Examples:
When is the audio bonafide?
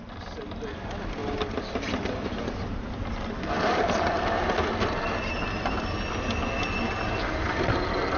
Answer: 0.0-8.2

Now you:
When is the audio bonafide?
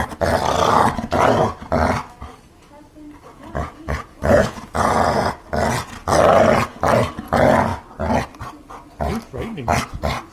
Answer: 0.0-3.3; 5.3-10.3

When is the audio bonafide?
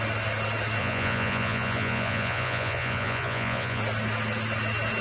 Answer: 0.0-0.8; 3.8-5.0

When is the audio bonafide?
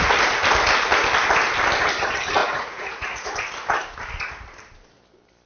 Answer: 0.0-2.4; 3.3-5.5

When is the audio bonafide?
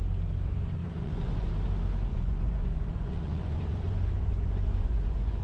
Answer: 0.0-0.8; 1.5-2.1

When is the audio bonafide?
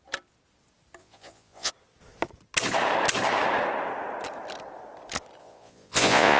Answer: 0.0-1.0; 1.7-5.4